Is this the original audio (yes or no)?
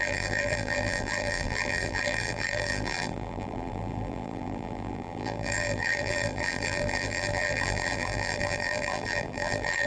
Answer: no